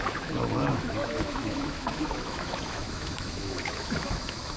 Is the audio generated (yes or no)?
yes